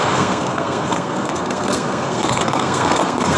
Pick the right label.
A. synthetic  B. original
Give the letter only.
A